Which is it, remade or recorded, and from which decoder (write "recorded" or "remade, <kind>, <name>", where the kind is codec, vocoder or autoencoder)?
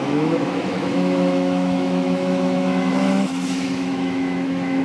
remade, autoencoder, DAC-VAE